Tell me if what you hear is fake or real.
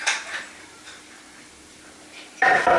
real